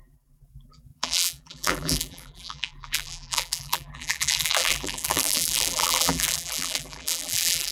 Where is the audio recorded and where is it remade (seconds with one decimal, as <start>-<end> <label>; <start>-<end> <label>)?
0.0-7.7 remade